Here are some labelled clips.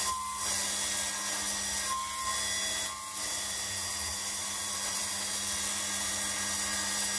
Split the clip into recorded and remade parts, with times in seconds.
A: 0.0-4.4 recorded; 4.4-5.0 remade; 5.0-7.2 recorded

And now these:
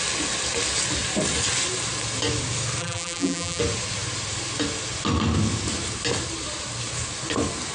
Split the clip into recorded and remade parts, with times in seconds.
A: 0.0-2.8 recorded; 2.8-3.6 remade; 3.6-7.7 recorded

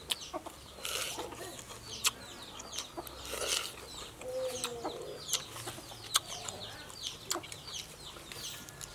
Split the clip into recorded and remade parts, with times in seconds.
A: 0.0-8.9 recorded

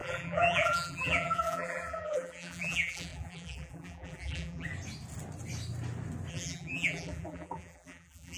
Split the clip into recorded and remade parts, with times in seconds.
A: 0.0-4.7 remade; 4.7-6.3 recorded; 6.3-8.4 remade

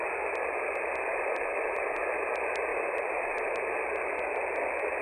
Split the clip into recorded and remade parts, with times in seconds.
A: 0.0-1.1 recorded; 1.1-2.0 remade; 2.0-2.7 recorded; 2.7-3.5 remade; 3.5-5.0 recorded